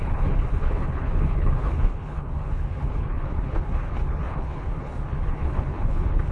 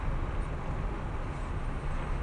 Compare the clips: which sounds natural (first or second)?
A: second